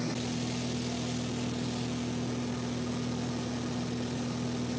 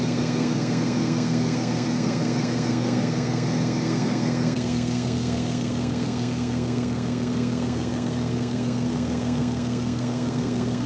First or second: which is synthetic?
second